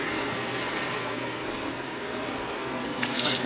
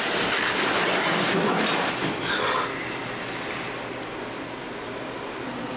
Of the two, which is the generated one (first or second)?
first